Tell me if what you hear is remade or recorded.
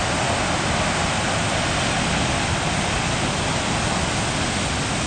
recorded